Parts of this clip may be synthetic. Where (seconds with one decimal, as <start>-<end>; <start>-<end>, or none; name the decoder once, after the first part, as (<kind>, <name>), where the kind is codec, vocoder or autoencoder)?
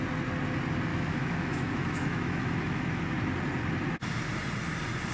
0.9-3.0 (autoencoder, DAC-VAE)